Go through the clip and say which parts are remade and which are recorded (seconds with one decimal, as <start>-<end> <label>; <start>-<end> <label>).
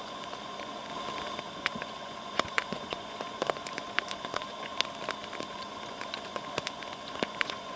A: 0.0-0.9 remade; 0.9-1.4 recorded; 1.4-4.7 remade; 4.7-5.5 recorded; 5.5-7.8 remade